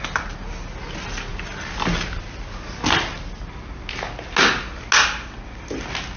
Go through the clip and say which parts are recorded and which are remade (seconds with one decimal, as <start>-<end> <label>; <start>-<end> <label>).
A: 0.0-6.2 recorded